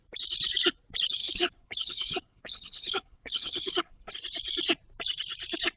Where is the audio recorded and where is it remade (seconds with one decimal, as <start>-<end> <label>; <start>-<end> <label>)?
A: 0.0-1.2 recorded; 1.2-4.1 remade; 4.1-5.8 recorded